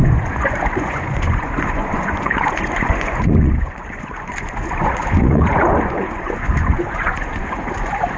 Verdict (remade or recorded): remade